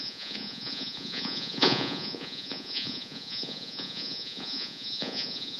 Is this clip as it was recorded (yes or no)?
no